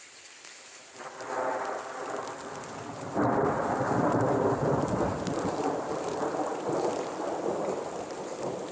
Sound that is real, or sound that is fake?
real